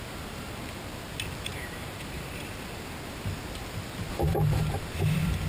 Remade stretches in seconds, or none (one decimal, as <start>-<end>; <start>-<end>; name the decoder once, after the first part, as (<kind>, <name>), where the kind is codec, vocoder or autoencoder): 1.5-2.5 (vocoder, BigVGAN v2); 4.3-4.9